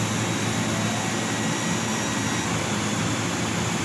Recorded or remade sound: recorded